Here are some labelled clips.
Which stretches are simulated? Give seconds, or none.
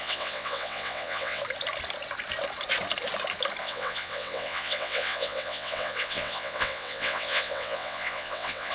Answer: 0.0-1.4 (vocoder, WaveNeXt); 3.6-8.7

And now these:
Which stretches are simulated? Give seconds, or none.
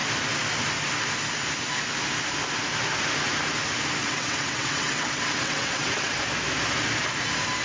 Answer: 4.0-6.2 (vocoder, WaveNeXt)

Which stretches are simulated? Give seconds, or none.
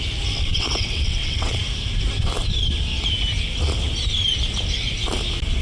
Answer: 0.5-1.6 (vocoder, WaveNeXt)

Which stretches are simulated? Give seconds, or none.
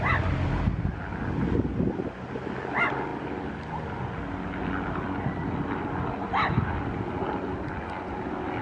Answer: none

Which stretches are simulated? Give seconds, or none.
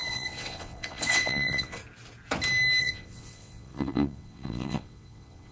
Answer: 0.0-1.8 (vocoder, WaveNeXt); 2.8-5.5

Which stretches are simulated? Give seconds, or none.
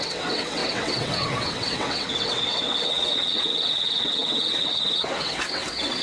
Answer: 0.0-6.0 (vocoder, WaveNeXt)